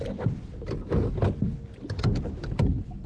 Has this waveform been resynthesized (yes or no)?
no